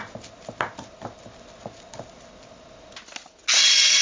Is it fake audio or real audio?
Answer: real